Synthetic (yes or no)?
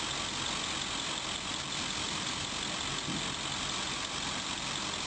no